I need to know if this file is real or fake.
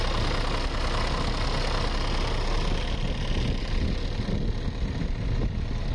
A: real